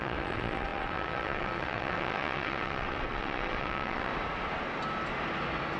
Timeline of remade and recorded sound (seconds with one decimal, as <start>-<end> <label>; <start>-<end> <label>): 0.0-4.1 remade; 4.1-5.8 recorded